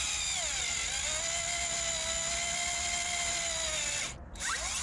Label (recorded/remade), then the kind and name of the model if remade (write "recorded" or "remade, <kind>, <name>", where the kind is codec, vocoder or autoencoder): recorded